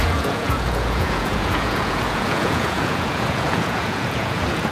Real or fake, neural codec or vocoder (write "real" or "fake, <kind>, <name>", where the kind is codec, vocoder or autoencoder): fake, vocoder, Vocos